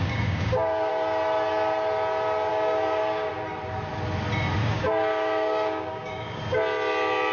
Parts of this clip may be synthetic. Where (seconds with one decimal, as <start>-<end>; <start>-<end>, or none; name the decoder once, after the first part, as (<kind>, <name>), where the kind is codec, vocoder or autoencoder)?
0.0-0.9 (codec, DAC); 2.5-3.3; 4.6-6.4